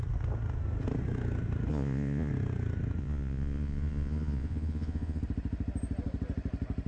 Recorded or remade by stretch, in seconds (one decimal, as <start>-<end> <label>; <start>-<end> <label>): 0.0-1.7 recorded; 1.7-2.3 remade; 2.3-3.0 recorded; 3.0-5.2 remade; 5.2-6.9 recorded